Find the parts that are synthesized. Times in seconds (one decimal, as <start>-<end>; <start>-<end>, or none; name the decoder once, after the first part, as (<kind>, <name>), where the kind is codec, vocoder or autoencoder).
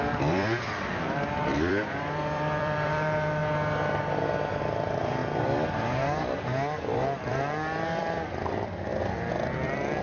0.0-3.4 (vocoder, BigVGAN v2); 4.5-5.2; 6.9-10.0